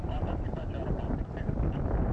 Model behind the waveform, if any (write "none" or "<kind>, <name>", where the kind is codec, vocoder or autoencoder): none